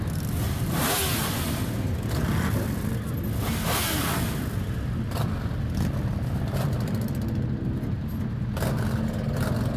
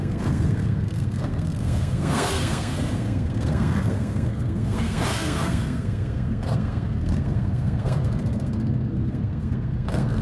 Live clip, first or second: first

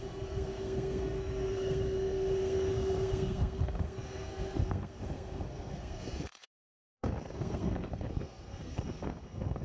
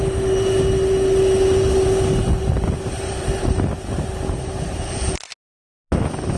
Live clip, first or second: second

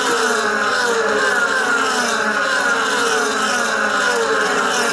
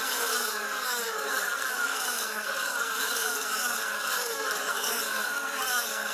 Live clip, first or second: first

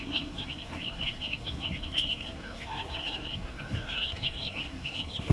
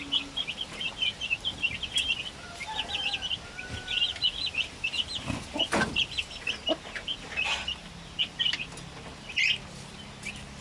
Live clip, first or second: second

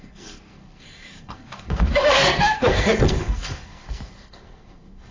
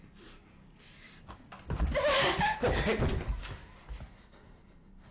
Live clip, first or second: second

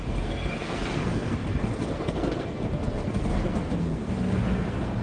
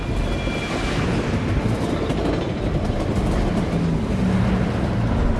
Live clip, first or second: second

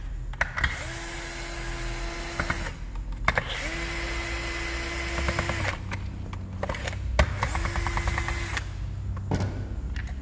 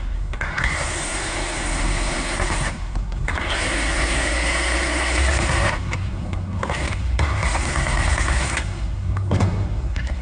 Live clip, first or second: first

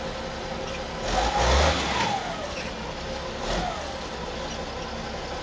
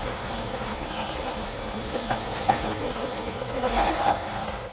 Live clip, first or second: first